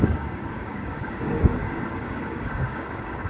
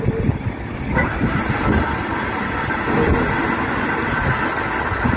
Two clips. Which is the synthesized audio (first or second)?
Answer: first